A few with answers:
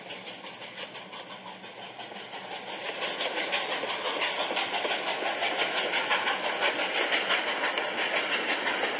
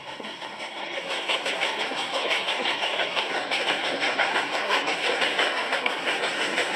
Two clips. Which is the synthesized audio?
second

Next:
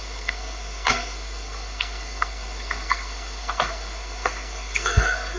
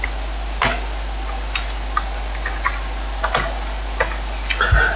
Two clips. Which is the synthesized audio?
first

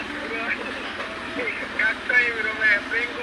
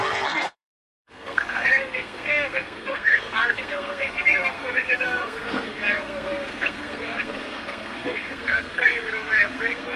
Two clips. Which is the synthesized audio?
second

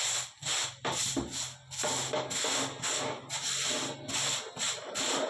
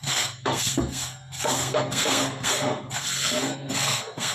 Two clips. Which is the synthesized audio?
second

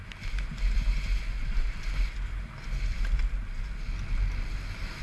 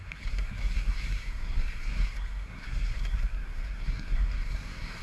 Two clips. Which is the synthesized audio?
second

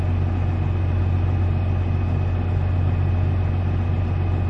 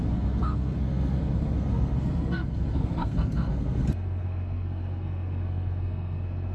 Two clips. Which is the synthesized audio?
second